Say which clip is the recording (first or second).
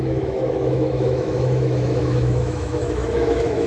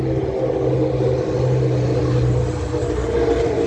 second